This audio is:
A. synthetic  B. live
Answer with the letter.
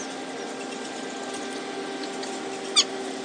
B